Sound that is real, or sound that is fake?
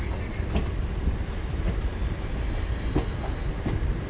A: real